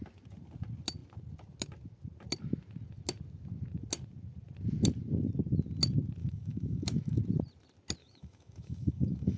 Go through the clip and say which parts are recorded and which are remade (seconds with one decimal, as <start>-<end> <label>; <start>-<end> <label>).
0.0-6.2 recorded; 6.2-7.2 remade; 7.2-8.0 recorded; 8.0-9.4 remade